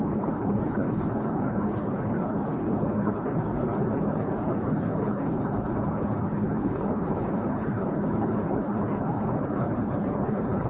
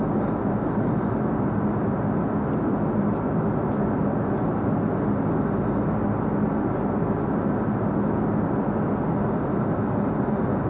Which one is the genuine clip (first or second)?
second